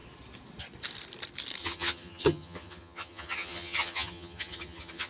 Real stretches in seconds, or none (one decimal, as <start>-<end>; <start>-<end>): 0.0-1.6